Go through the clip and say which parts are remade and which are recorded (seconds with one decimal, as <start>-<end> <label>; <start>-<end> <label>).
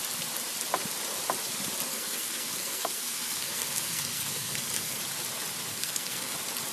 0.0-1.9 recorded; 1.9-5.0 remade; 5.0-5.7 recorded; 5.7-6.3 remade; 6.3-6.7 recorded